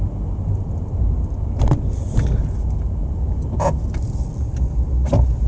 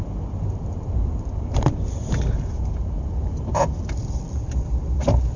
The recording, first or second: first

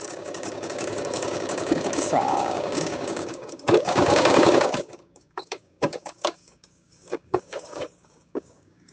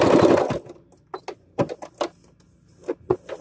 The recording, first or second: second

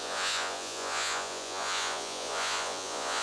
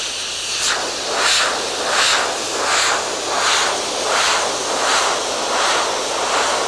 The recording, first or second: second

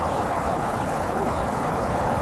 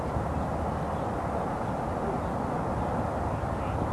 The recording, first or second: second